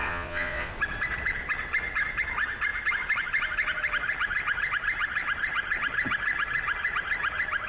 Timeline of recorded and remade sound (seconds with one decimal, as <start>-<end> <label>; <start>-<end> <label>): 0.0-0.7 remade; 0.7-7.7 recorded